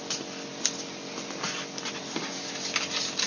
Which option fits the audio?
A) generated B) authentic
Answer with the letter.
B